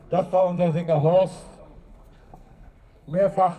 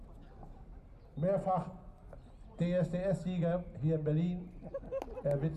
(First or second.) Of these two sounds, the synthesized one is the first